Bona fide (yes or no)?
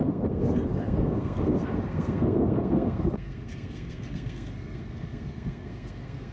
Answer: no